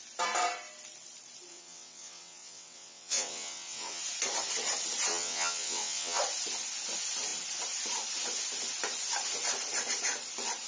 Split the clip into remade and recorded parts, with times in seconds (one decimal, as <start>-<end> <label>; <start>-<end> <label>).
0.0-1.5 recorded; 1.5-4.0 remade; 4.0-5.1 recorded; 5.1-6.2 remade; 6.2-10.7 recorded